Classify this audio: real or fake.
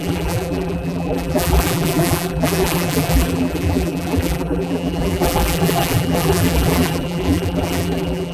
fake